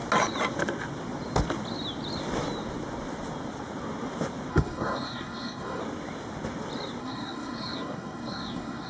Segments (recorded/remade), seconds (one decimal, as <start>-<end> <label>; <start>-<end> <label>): 0.0-4.5 recorded; 4.5-5.8 remade; 5.8-7.0 recorded; 7.0-8.9 remade